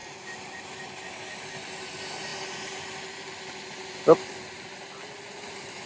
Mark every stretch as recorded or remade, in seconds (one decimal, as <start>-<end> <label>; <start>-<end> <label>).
0.0-5.9 recorded